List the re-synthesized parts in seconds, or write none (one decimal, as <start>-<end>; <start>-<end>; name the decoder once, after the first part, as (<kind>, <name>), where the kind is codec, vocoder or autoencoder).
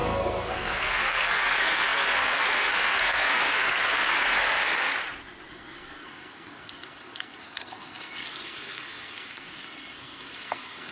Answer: 0.0-4.9 (codec, SNAC); 5.5-10.9